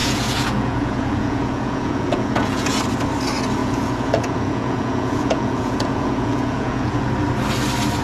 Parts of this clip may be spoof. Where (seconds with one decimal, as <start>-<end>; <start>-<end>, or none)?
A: 0.0-2.8; 3.6-7.1